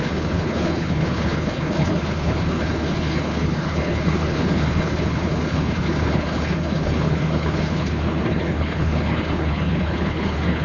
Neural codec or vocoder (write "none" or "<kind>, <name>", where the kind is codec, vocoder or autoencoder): codec, HILCodec